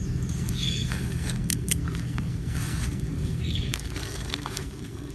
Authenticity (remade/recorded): remade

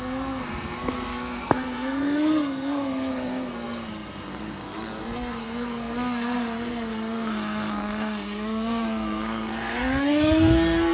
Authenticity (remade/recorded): remade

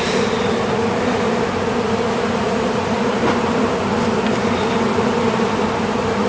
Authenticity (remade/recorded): recorded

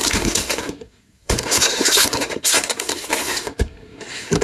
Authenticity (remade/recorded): remade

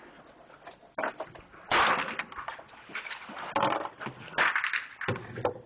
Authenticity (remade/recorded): recorded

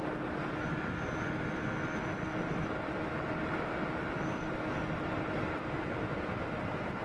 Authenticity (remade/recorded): recorded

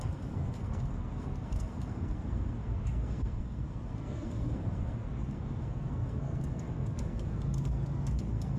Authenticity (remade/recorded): remade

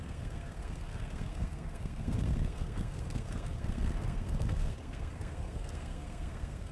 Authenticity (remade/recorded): remade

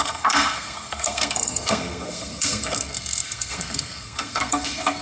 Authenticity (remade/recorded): remade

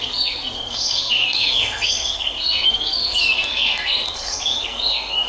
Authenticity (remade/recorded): remade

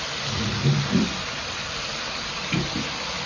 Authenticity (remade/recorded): recorded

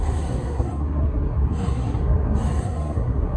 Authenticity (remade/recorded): remade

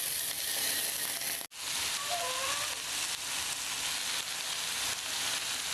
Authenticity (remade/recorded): recorded